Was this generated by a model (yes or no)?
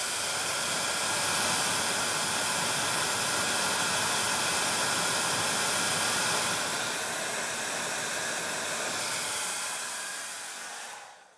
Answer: no